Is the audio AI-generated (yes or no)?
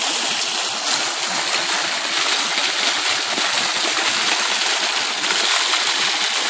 no